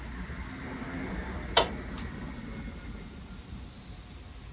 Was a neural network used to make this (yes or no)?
no